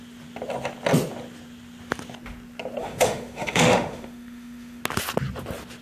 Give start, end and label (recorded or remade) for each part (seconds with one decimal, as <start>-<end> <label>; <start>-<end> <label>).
0.0-2.8 recorded; 2.8-4.8 remade; 4.8-5.8 recorded